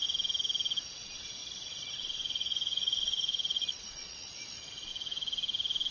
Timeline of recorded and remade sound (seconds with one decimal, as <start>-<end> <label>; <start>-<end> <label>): 0.0-1.4 recorded; 1.4-4.9 remade; 4.9-5.9 recorded